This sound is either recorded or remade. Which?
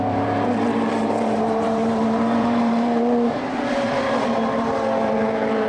remade